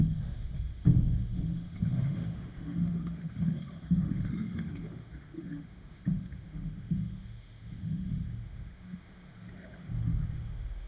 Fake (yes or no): yes